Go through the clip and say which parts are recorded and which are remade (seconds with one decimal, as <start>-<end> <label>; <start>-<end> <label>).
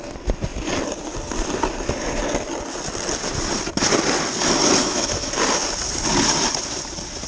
0.0-4.8 recorded; 4.8-5.3 remade; 5.3-7.3 recorded